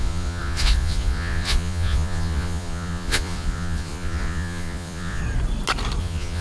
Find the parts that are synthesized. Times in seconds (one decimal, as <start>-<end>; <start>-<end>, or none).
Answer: 0.0-5.2; 6.0-6.4